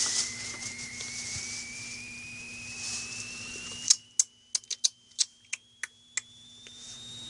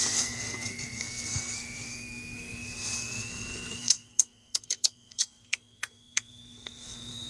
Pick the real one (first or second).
first